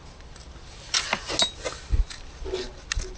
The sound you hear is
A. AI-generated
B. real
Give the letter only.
B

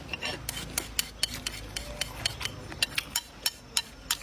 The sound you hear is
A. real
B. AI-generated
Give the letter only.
A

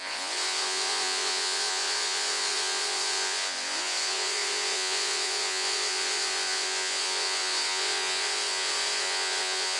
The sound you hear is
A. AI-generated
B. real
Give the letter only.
A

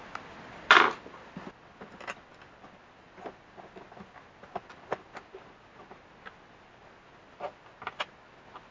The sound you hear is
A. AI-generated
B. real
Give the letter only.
B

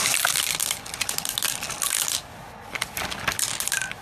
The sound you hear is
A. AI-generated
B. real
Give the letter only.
B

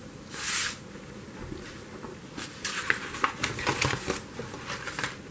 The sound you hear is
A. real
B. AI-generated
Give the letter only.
A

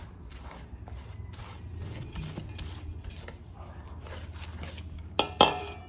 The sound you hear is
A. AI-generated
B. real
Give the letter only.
B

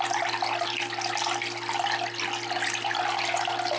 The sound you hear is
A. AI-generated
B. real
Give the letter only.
B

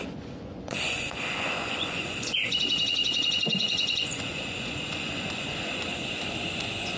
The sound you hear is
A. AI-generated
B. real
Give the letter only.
A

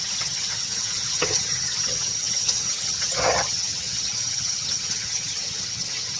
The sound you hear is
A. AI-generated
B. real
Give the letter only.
A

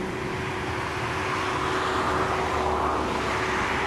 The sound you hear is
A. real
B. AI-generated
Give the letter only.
A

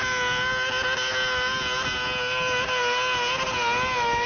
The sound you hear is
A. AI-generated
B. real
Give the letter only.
B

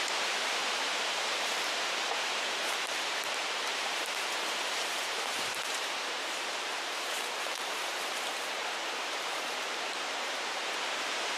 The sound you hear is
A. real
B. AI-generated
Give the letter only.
B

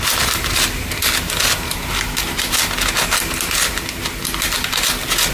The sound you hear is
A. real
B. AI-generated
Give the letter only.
A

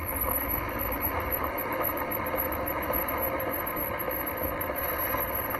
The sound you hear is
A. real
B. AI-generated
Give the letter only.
A